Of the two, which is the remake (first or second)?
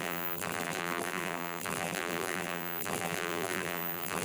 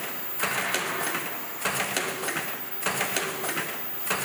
first